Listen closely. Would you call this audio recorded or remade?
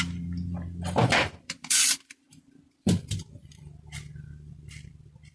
remade